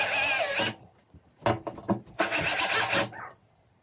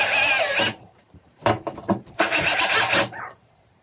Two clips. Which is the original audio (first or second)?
first